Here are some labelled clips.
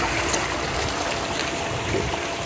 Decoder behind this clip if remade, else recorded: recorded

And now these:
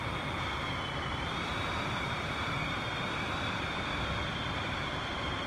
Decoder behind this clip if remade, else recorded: remade, vocoder, BigVGAN v2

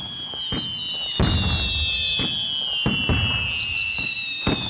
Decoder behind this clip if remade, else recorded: recorded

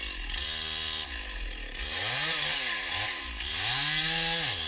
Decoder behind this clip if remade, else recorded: recorded